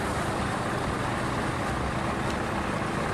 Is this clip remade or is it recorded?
recorded